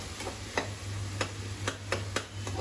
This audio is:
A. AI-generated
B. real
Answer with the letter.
B